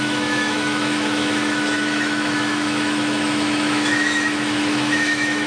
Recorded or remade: remade